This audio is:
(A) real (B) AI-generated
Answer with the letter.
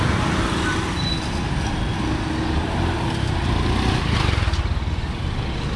A